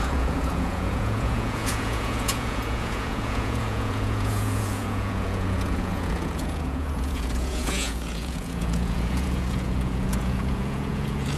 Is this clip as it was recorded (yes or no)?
no